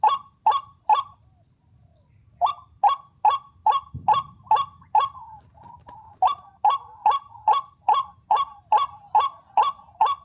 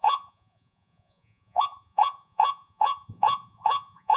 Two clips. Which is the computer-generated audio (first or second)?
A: second